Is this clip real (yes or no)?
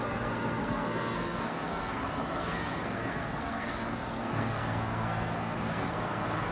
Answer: no